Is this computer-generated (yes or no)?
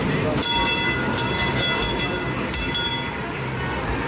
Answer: no